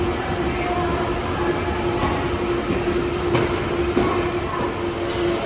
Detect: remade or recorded recorded